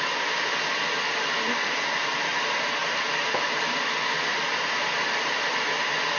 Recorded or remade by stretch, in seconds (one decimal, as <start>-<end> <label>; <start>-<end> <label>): 0.0-6.2 recorded